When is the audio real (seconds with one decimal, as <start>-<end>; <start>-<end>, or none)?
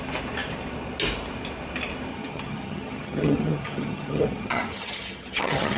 0.0-2.1